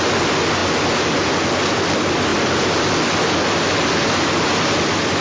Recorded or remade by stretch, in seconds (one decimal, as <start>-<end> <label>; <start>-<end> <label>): 0.0-5.2 recorded